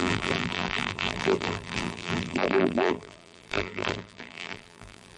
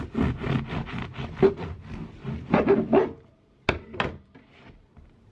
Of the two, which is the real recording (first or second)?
second